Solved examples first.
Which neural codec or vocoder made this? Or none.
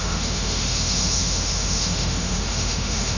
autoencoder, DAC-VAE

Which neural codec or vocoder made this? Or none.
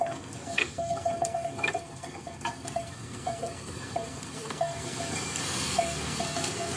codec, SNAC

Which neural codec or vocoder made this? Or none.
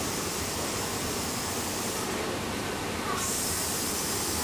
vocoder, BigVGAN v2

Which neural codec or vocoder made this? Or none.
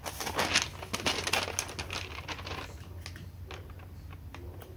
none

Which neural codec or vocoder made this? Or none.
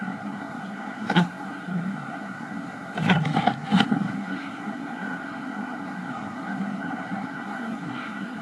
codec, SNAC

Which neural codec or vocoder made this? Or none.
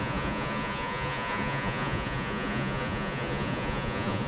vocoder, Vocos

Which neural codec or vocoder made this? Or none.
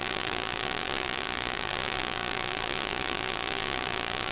vocoder, Vocos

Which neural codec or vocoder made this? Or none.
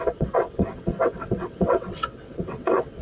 vocoder, WaveNeXt